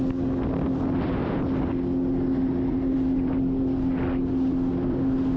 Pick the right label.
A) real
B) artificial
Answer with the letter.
A